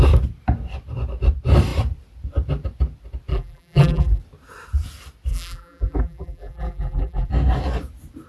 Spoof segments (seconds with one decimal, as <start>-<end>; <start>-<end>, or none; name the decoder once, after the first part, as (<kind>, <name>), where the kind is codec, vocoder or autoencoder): 3.3-4.2 (vocoder, BigVGAN v2); 5.3-7.3